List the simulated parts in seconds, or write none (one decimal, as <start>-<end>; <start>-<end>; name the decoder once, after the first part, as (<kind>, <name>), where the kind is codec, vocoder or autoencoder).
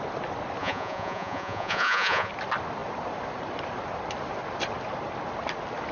0.6-2.3 (vocoder, Vocos)